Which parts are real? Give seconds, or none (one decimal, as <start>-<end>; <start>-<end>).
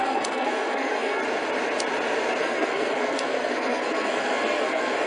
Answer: 1.2-2.4